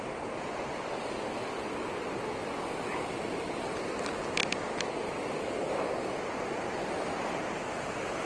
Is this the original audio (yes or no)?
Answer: yes